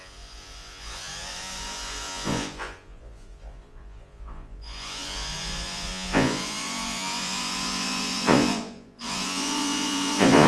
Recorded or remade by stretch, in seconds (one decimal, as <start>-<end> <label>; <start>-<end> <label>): 0.0-10.5 remade